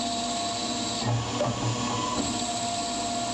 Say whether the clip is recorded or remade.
recorded